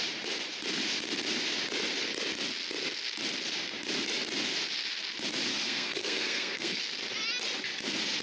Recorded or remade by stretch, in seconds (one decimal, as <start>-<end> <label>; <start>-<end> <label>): 0.0-5.5 recorded; 5.5-6.8 remade; 6.8-8.2 recorded